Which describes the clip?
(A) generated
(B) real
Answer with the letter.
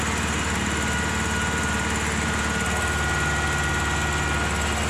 B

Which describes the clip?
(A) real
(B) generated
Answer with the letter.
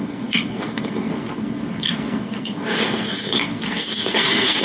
B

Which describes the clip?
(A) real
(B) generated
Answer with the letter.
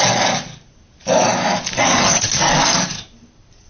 A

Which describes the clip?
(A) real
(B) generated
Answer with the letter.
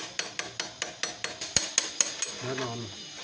A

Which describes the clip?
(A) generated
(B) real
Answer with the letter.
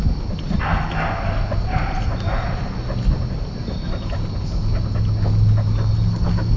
B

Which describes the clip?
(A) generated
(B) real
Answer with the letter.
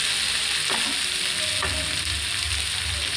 B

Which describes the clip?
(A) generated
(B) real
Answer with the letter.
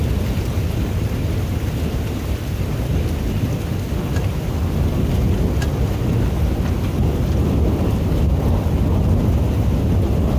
B